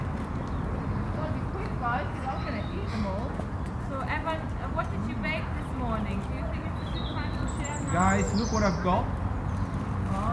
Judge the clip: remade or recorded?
recorded